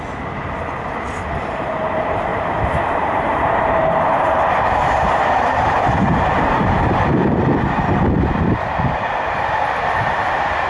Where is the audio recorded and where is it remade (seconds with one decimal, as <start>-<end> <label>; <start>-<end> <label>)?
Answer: 0.0-2.3 recorded; 2.3-7.4 remade; 7.4-10.7 recorded